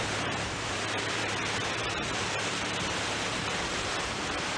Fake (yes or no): yes